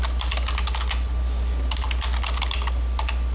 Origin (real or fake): real